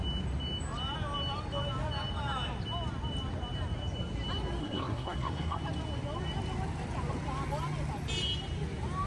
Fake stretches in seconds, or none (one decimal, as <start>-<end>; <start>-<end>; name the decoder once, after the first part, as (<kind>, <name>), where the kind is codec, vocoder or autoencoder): 4.6-5.6 (codec, SNAC)